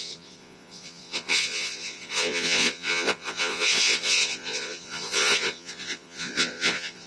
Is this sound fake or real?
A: fake